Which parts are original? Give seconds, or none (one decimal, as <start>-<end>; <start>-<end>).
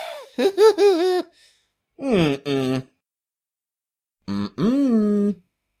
1.8-5.3